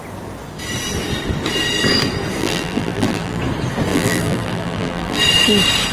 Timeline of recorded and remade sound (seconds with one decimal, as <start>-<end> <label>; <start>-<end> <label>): 0.0-2.4 recorded; 2.4-3.4 remade; 3.4-3.9 recorded; 3.9-5.2 remade; 5.2-5.9 recorded